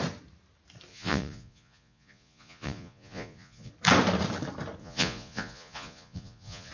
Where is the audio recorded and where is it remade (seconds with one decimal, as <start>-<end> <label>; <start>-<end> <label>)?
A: 0.0-0.9 recorded; 0.9-3.7 remade; 3.7-4.8 recorded; 4.8-6.7 remade